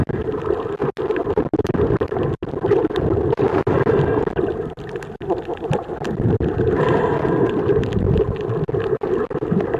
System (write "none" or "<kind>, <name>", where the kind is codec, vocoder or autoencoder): none